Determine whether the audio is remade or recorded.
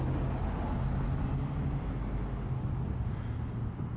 recorded